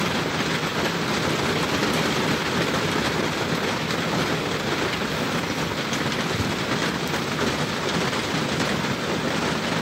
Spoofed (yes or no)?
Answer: no